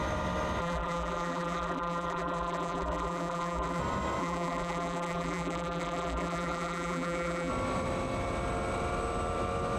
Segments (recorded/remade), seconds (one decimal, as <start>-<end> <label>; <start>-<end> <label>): 0.0-0.6 recorded; 0.6-3.8 remade; 3.8-4.2 recorded; 4.2-7.5 remade; 7.5-9.8 recorded

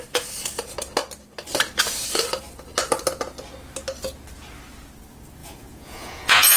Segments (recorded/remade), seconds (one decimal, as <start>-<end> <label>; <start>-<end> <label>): 0.0-5.4 recorded; 5.4-6.6 remade

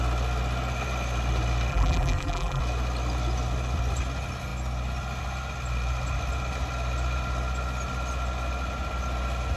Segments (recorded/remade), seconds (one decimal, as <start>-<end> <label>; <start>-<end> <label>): 0.0-1.7 recorded; 1.7-2.6 remade; 2.6-9.6 recorded

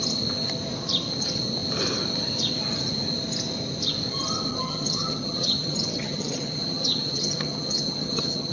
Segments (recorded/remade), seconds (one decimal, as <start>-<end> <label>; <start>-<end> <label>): 0.0-4.5 recorded; 4.5-8.5 remade

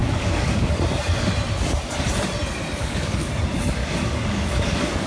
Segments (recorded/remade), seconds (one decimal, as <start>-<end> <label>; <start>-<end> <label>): 0.0-0.7 remade; 0.7-2.8 recorded; 2.8-3.3 remade; 3.3-3.8 recorded; 3.8-5.1 remade

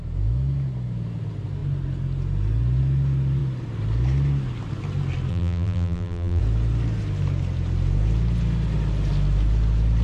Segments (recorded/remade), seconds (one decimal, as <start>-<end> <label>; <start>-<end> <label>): 0.0-5.3 recorded; 5.3-6.4 remade; 6.4-10.0 recorded

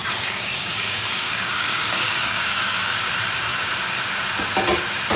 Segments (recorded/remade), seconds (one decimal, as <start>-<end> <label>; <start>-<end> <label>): 0.0-3.1 remade; 3.1-3.5 recorded; 3.5-4.2 remade; 4.2-5.2 recorded